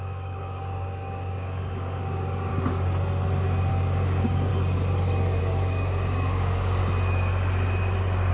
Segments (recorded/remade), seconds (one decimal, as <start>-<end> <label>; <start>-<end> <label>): 0.0-2.5 remade; 2.5-3.7 recorded; 3.7-4.5 remade; 4.5-5.4 recorded; 5.4-6.8 remade; 6.8-8.3 recorded